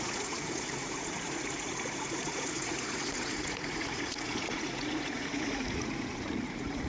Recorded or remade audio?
remade